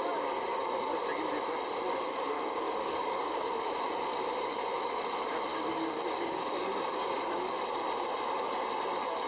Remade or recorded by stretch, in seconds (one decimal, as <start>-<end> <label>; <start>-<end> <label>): 0.0-2.1 recorded; 2.1-3.5 remade; 3.5-5.5 recorded; 5.5-6.9 remade; 6.9-9.3 recorded